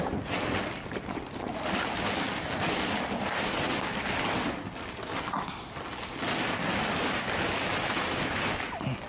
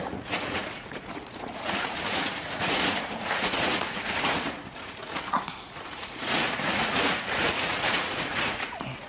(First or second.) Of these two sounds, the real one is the first